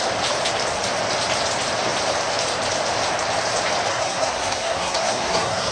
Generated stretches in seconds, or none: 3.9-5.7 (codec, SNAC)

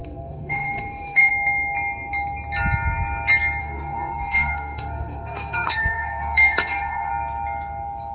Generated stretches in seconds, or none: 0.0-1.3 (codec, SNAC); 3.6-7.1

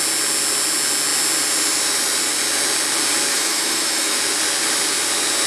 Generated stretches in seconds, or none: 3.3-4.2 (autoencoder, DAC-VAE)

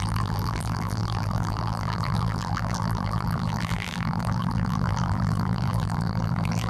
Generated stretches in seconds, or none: 0.0-6.7 (vocoder, BigVGAN v2)

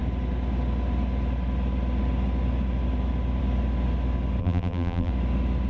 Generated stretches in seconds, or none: 4.4-5.1 (vocoder, BigVGAN v2)